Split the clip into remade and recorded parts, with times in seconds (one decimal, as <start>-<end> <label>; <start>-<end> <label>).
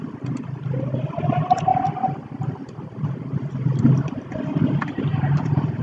0.0-5.1 recorded; 5.1-5.8 remade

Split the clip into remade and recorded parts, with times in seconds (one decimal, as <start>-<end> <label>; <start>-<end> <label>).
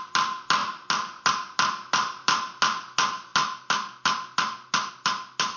0.0-5.6 recorded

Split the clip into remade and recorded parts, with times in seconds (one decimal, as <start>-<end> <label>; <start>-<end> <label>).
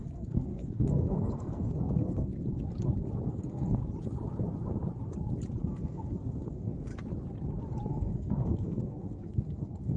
0.0-2.3 remade; 2.3-3.3 recorded; 3.3-3.8 remade; 3.8-5.6 recorded; 5.6-6.9 remade; 6.9-7.9 recorded; 7.9-10.0 remade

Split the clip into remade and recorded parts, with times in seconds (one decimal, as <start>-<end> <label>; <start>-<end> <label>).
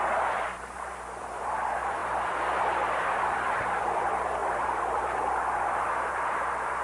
0.0-6.8 remade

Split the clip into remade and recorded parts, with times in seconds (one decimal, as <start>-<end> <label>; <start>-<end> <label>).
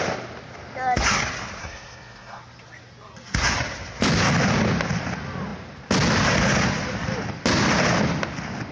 0.0-1.6 recorded; 1.6-2.4 remade; 2.4-8.7 recorded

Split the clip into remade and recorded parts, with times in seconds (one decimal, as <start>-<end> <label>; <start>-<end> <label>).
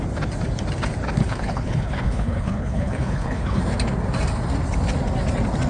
0.0-1.2 recorded; 1.2-3.6 remade; 3.6-5.7 recorded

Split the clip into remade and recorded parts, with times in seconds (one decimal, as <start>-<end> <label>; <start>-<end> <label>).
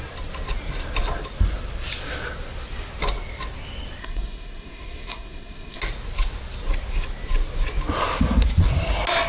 0.0-4.0 recorded; 4.0-5.8 remade; 5.8-9.3 recorded